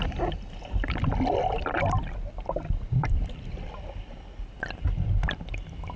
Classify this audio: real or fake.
real